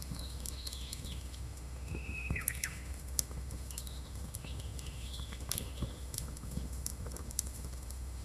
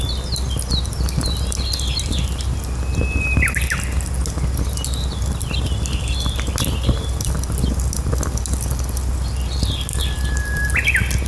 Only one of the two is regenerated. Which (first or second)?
first